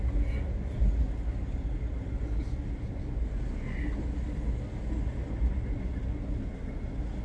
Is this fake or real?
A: real